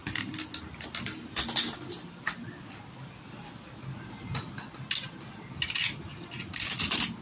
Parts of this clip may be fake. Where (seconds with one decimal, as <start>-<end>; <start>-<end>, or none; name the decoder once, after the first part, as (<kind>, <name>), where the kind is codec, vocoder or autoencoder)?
none